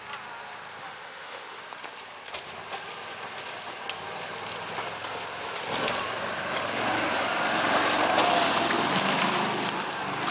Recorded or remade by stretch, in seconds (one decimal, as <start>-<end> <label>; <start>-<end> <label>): 0.0-0.8 recorded; 0.8-1.6 remade; 1.6-10.3 recorded